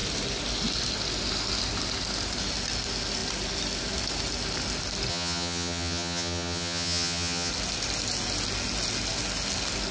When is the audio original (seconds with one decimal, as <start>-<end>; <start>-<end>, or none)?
0.0-5.1; 7.5-9.9